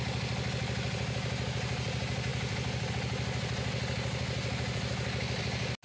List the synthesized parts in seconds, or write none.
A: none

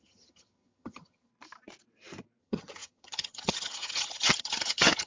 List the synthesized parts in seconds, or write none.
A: 0.0-1.3 (vocoder, HiFi-GAN); 2.4-5.1

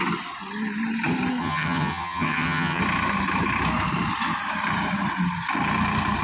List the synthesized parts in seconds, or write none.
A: 1.4-2.8 (vocoder, HiFi-GAN)

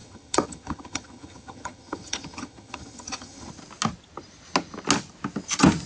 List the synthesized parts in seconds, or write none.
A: 0.0-3.5 (vocoder, HiFi-GAN)

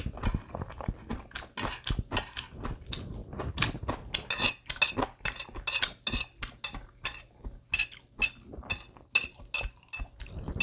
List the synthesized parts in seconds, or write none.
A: none

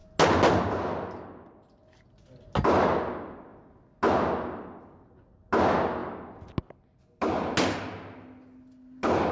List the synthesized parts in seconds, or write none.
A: none